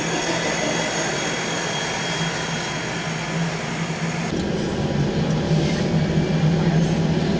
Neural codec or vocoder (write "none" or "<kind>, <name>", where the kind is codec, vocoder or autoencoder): none